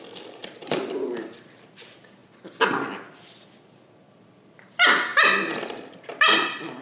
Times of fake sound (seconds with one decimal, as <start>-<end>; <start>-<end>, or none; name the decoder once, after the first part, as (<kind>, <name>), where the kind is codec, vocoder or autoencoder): 0.4-1.4 (vocoder, BigVGAN v2); 2.2-3.0; 5.1-6.8